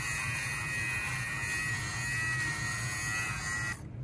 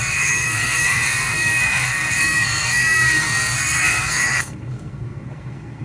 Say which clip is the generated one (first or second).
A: second